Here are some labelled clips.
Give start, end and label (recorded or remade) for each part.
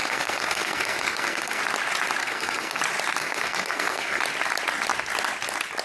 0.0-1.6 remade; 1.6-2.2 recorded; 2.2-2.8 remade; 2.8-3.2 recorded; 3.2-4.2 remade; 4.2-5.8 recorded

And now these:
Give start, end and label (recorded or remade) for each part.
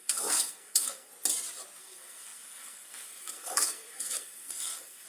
0.0-1.1 remade; 1.1-1.8 recorded; 1.8-5.1 remade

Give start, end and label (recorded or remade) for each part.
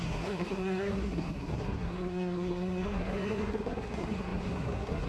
0.0-5.1 remade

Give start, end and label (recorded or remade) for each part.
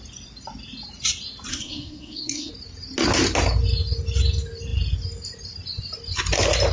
0.0-1.5 recorded; 1.5-2.5 remade; 2.5-6.7 recorded